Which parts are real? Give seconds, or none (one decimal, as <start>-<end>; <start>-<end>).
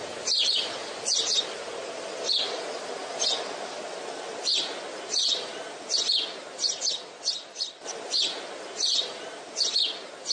0.0-0.8; 1.4-10.3